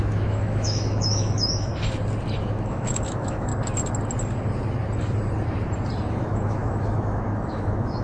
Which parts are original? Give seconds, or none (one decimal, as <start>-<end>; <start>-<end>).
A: 1.7-2.4; 3.5-6.1